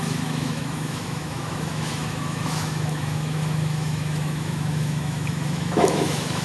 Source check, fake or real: fake